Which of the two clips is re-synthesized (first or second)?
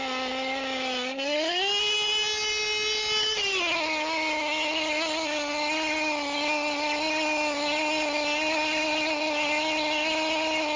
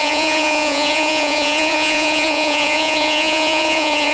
second